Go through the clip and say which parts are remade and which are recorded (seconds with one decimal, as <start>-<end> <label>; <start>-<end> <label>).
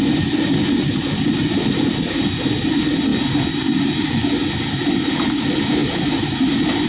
0.0-5.8 recorded; 5.8-6.3 remade; 6.3-6.9 recorded